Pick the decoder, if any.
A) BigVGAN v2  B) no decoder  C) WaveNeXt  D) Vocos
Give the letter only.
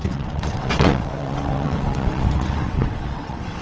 C